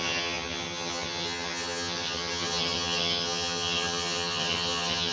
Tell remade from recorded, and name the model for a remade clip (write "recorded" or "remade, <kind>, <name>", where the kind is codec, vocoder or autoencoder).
remade, vocoder, HiFi-GAN